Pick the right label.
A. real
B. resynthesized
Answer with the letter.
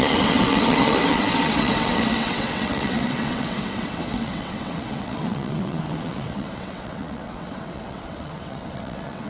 B